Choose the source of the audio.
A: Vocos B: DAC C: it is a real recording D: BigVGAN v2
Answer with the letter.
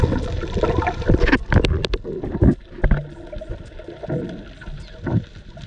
C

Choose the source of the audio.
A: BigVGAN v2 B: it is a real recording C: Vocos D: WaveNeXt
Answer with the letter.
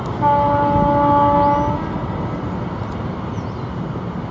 B